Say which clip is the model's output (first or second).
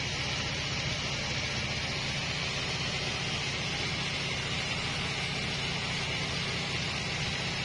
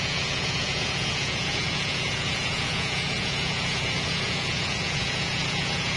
second